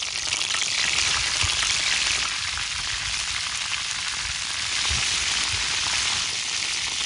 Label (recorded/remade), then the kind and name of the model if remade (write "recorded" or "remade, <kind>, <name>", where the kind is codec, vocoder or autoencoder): recorded